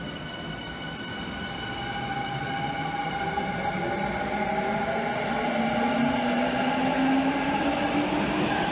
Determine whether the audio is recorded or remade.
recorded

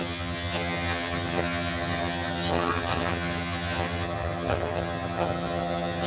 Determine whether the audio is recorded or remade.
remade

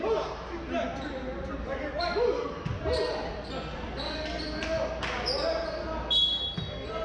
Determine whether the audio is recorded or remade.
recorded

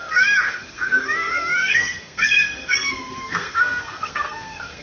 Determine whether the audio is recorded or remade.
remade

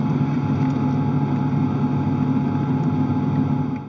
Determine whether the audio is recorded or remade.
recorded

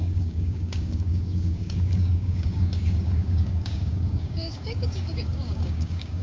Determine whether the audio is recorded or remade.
remade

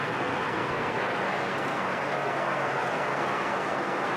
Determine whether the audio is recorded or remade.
remade